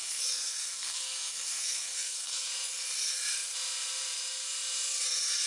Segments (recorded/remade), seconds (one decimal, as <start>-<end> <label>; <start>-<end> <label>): 0.0-2.5 remade; 2.5-5.5 recorded